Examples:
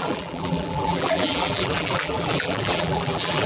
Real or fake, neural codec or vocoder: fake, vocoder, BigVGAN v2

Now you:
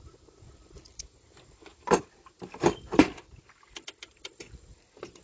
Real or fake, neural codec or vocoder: fake, vocoder, BigVGAN v2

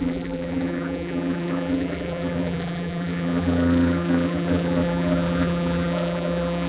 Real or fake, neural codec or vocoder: fake, vocoder, BigVGAN v2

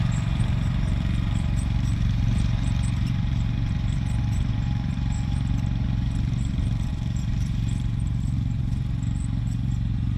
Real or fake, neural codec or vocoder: fake, vocoder, BigVGAN v2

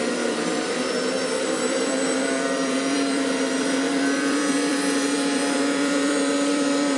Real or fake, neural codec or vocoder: fake, vocoder, BigVGAN v2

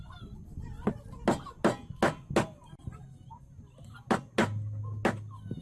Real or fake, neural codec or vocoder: real